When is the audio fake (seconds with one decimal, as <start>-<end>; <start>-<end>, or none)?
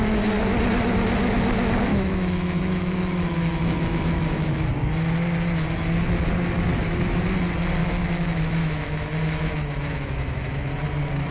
1.9-4.7; 7.8-10.7